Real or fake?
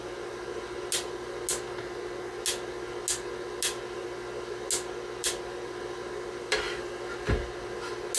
real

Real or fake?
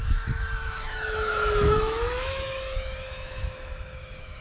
fake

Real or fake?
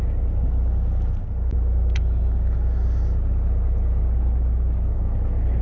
real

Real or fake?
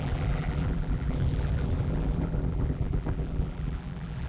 fake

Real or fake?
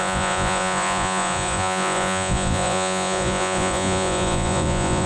fake